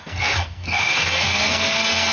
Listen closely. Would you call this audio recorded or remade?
remade